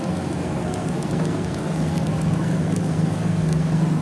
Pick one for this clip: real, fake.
fake